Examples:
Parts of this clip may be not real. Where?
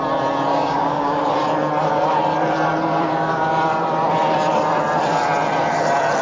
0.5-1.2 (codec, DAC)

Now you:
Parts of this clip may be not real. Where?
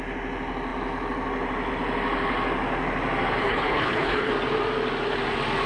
3.4-4.3 (codec, HILCodec)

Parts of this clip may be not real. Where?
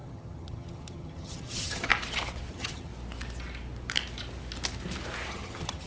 0.0-1.9 (vocoder, HiFi-GAN); 2.5-2.9; 5.3-5.9